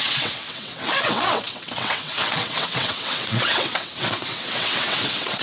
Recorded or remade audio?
remade